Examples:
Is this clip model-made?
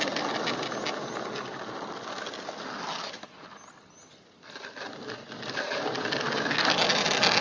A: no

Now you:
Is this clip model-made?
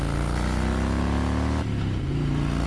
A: no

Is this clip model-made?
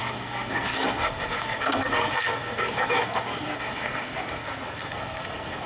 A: yes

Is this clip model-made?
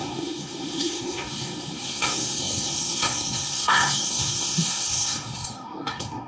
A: yes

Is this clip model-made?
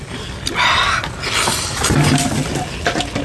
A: no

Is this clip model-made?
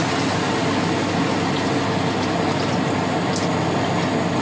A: no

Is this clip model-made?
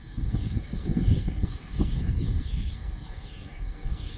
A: yes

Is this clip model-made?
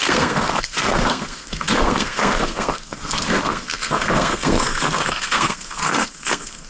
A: yes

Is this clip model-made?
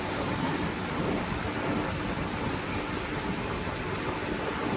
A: no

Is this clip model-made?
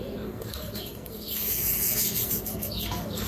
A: yes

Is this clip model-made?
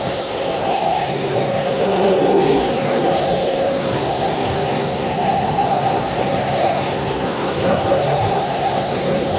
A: yes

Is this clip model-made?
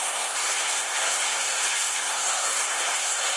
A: yes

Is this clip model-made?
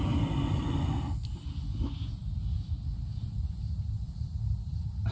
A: no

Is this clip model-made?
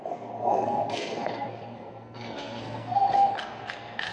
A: yes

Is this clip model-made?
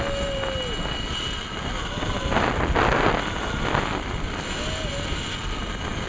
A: no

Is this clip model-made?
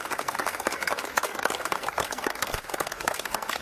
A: yes